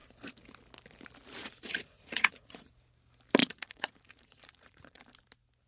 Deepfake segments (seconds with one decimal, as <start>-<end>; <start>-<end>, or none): 1.4-2.7; 3.4-5.0